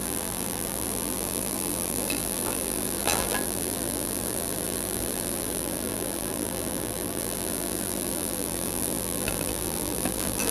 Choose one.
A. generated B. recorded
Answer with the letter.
A